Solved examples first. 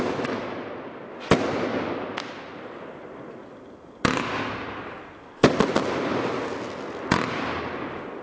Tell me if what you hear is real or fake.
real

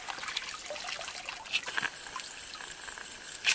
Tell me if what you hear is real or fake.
real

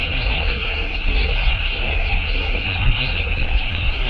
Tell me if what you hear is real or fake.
fake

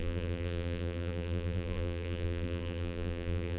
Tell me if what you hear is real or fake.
fake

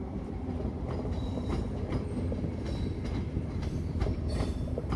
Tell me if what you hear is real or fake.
fake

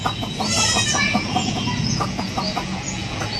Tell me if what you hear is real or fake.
fake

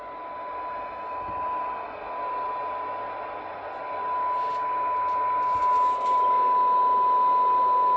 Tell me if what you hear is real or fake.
real